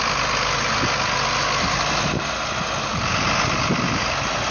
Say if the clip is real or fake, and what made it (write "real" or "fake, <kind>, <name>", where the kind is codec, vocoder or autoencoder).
real